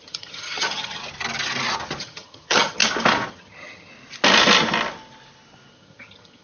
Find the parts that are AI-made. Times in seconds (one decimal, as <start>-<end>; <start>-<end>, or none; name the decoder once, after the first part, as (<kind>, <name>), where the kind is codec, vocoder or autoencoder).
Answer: 0.0-1.0 (vocoder, HiFi-GAN); 2.0-2.8; 3.3-3.9; 5.7-6.4